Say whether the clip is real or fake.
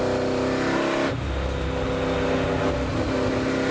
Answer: real